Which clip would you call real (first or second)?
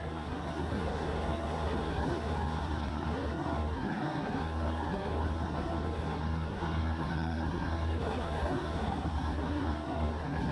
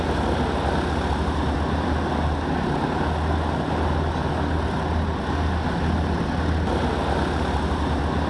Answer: second